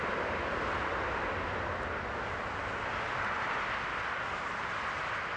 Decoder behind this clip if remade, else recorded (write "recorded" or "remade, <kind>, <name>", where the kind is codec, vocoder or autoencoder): recorded